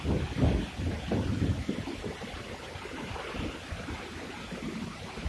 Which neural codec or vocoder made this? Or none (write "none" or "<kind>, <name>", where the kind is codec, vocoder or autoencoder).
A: none